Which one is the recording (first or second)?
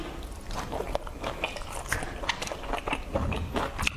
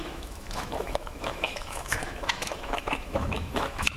first